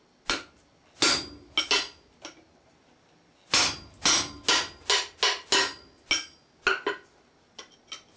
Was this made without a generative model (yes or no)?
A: yes